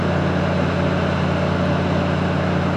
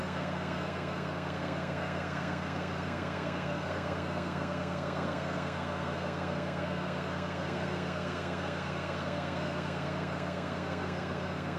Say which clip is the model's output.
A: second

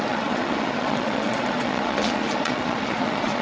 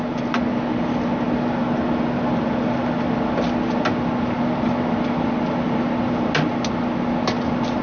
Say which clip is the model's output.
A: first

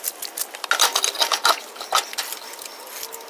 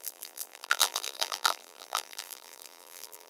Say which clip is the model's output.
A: second